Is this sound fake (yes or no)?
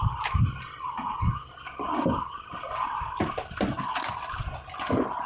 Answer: no